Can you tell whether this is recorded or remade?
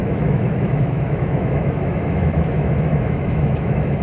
remade